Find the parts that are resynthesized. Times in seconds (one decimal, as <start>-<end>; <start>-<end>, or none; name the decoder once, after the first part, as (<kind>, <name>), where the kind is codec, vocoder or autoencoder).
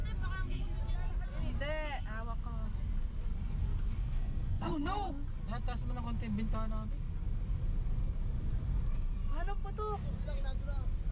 4.0-5.1 (codec, SNAC)